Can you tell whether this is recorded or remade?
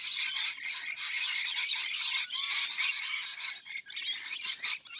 recorded